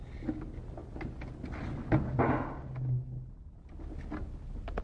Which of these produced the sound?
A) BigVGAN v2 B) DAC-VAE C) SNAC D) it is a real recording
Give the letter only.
D